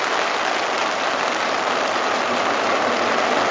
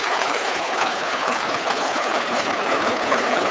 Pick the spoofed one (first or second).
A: second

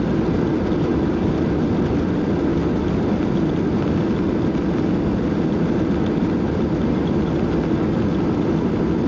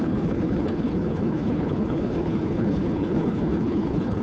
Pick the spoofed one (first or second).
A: second